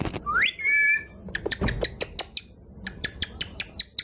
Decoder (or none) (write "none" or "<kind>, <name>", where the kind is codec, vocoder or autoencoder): none